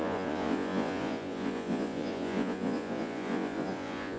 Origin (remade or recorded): remade